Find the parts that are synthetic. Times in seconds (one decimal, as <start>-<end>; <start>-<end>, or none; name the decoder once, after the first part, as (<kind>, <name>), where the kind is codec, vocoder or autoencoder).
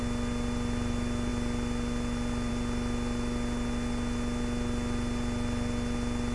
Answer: none